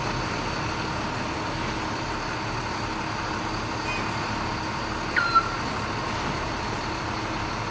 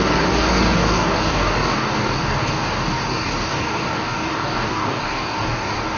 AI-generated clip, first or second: second